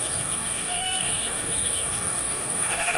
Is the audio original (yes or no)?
no